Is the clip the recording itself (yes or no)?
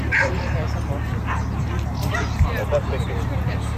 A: yes